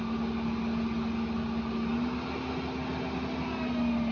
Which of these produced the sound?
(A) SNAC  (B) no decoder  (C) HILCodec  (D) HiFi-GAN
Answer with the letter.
B